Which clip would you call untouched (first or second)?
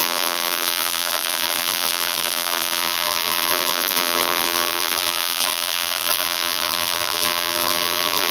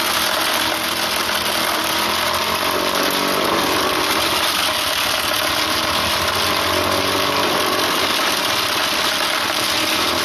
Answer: second